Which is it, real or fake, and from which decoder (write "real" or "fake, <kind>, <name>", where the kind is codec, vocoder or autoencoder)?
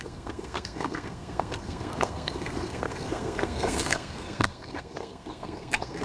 fake, codec, SNAC